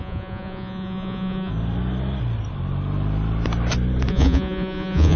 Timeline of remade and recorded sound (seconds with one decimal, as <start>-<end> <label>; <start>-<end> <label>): 0.0-1.5 remade; 1.5-4.1 recorded; 4.1-5.2 remade